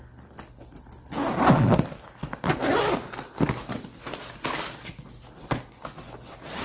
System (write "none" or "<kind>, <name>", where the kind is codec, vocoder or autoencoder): none